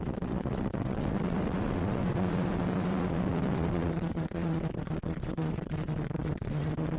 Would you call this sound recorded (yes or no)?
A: no